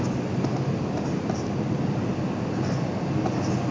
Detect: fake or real real